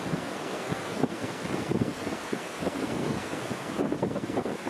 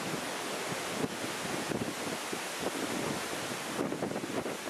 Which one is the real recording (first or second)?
second